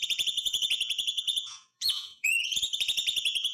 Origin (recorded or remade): remade